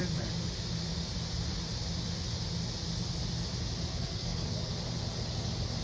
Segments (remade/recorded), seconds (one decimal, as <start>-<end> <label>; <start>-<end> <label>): 0.0-3.9 recorded; 3.9-4.7 remade; 4.7-5.8 recorded